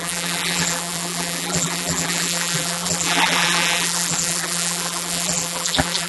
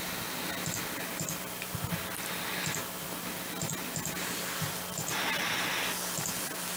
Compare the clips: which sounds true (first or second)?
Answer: second